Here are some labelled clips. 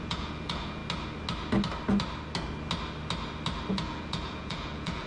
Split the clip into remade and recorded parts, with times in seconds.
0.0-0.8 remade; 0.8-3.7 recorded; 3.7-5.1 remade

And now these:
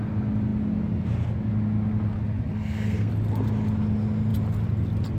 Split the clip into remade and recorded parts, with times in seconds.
0.0-2.5 recorded; 2.5-3.1 remade; 3.1-5.2 recorded

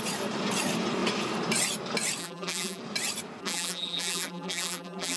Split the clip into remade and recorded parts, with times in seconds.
0.0-2.2 recorded; 2.2-2.8 remade; 2.8-3.4 recorded; 3.4-5.2 remade

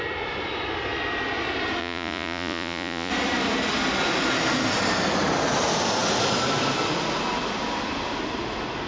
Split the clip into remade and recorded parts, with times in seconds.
0.0-1.8 recorded; 1.8-3.1 remade; 3.1-8.9 recorded

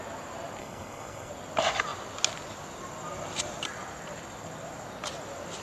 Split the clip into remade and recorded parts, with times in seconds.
0.0-0.6 recorded; 0.6-1.3 remade; 1.3-5.6 recorded